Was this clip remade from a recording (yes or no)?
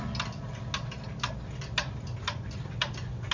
no